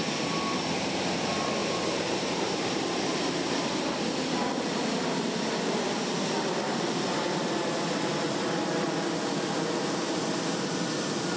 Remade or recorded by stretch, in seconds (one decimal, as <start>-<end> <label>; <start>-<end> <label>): 0.0-1.6 recorded; 1.6-3.5 remade; 3.5-11.4 recorded